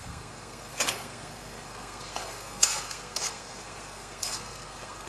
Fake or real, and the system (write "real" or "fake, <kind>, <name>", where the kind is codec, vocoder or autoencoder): fake, codec, SNAC